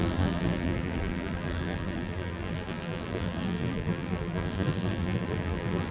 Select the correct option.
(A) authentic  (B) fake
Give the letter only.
B